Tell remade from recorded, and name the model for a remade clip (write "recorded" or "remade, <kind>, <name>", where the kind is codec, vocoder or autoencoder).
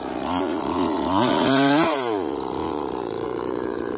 remade, vocoder, Vocos